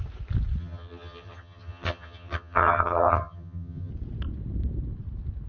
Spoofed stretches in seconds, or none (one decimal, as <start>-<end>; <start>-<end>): 0.6-3.9